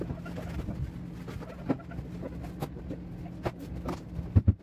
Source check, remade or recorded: recorded